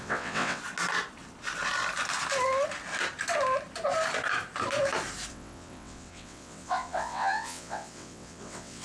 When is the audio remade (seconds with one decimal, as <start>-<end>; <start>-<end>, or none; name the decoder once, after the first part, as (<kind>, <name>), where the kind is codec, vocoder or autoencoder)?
0.0-0.6 (vocoder, WaveNeXt); 5.3-8.8